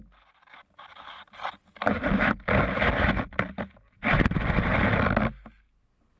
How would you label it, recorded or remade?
recorded